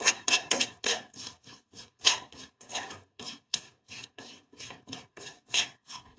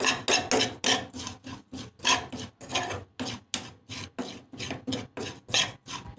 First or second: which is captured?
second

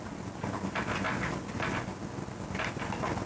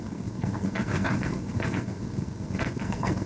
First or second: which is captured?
first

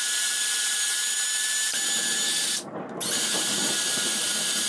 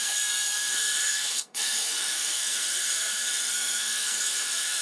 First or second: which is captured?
first